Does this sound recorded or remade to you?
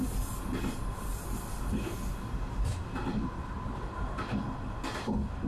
recorded